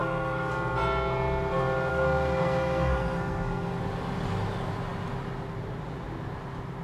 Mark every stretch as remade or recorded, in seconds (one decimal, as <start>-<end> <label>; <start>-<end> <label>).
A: 0.0-0.5 remade; 0.5-1.9 recorded; 1.9-3.8 remade; 3.8-6.8 recorded